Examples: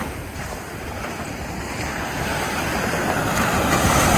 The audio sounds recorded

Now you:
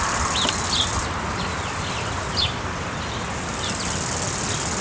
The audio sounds recorded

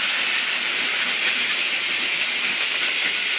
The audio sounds recorded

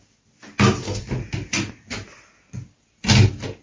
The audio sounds recorded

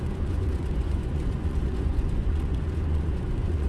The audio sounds remade